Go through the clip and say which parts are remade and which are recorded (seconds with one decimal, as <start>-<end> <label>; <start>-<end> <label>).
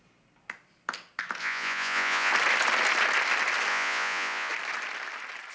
0.0-1.4 recorded; 1.4-2.3 remade; 2.3-3.7 recorded; 3.7-4.5 remade; 4.5-5.5 recorded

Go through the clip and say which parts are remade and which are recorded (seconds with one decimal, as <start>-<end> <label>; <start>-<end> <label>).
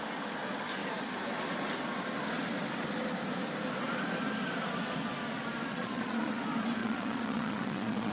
0.0-5.7 recorded; 5.7-6.3 remade; 6.3-6.8 recorded; 6.8-8.1 remade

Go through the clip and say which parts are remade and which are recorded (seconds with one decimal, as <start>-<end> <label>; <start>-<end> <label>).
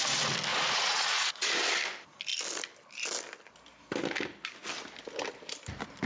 0.0-0.5 recorded; 0.5-1.5 remade; 1.5-6.1 recorded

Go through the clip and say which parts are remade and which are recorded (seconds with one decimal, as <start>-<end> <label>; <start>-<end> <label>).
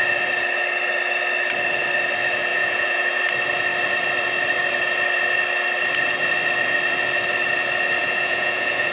0.0-2.5 recorded; 2.5-3.2 remade; 3.2-8.0 recorded; 8.0-8.9 remade